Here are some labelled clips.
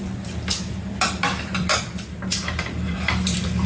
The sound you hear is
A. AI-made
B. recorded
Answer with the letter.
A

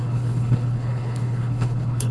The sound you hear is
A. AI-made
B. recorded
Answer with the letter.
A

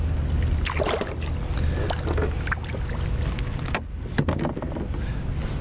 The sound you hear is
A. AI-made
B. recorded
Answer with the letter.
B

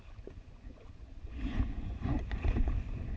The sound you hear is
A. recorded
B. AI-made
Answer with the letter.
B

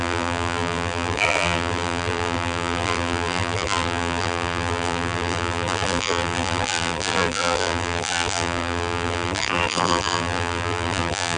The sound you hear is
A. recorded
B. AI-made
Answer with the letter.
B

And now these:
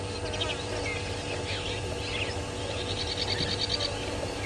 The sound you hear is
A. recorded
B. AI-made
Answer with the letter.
A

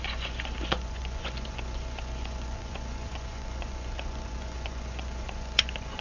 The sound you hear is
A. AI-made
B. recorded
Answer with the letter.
A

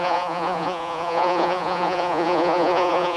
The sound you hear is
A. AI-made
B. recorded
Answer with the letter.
A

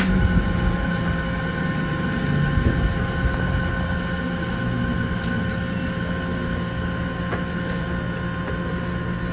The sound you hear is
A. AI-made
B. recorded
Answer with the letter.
B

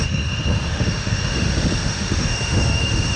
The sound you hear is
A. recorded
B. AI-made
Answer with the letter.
B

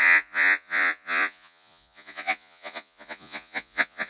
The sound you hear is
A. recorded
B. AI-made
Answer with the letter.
B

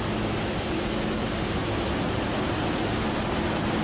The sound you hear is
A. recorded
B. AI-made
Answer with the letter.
A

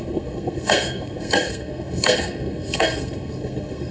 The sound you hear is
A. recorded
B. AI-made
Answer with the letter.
B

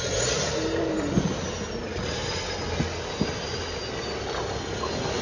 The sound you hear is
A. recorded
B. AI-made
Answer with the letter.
A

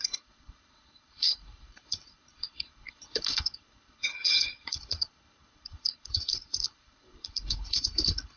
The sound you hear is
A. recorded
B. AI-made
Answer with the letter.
B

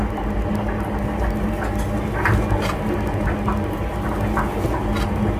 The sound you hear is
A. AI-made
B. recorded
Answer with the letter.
B